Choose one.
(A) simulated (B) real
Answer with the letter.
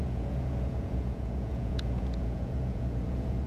A